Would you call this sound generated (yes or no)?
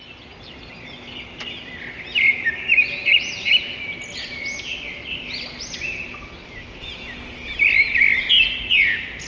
no